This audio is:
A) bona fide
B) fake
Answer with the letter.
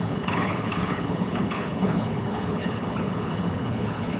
B